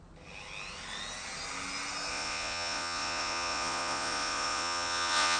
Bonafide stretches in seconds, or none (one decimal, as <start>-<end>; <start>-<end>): 0.0-2.1

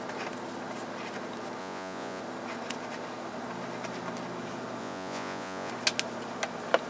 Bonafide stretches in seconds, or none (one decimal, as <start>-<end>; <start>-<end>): 0.0-1.6; 2.2-4.8; 5.7-6.9

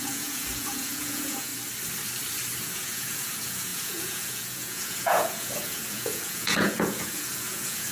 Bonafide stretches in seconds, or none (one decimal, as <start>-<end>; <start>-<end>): 1.5-2.6

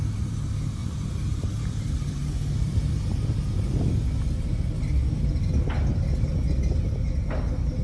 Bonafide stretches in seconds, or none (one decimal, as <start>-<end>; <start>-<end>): 0.0-0.8; 5.5-7.8

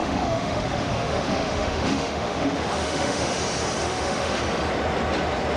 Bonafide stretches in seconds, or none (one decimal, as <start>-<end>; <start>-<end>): 3.4-3.8; 4.4-5.6

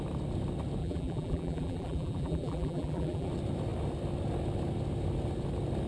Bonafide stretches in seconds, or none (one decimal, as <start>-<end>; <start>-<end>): 0.0-0.8; 3.3-5.9